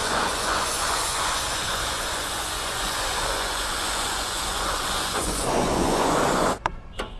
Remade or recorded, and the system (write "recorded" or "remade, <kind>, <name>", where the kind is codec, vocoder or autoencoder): remade, vocoder, Vocos